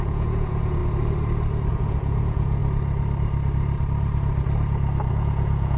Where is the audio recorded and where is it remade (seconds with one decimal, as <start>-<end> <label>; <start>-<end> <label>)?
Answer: 0.0-0.8 remade; 0.8-1.7 recorded; 1.7-2.6 remade; 2.6-5.1 recorded; 5.1-5.8 remade